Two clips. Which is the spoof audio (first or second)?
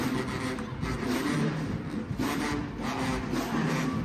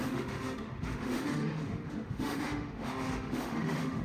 second